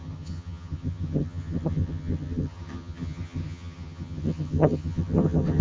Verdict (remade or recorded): remade